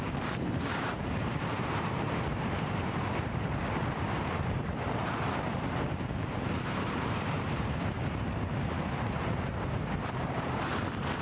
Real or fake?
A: fake